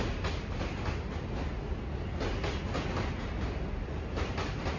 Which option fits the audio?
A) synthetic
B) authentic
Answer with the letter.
B